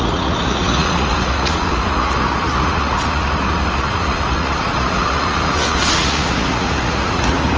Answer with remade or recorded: remade